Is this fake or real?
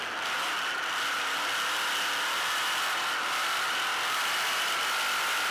real